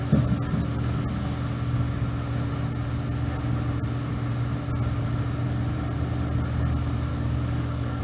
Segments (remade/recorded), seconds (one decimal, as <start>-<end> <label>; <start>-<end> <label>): 0.0-7.1 recorded; 7.1-8.0 remade